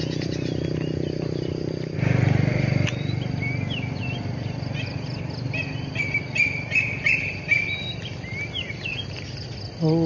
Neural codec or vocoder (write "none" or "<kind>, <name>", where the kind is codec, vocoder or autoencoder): none